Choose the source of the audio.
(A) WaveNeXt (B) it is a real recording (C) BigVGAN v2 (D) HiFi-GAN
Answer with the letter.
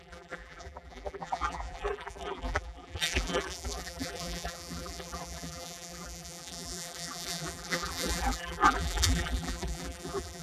C